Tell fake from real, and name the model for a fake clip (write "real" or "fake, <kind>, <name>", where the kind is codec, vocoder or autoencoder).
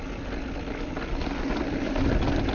real